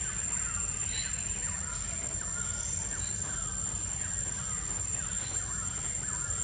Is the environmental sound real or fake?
real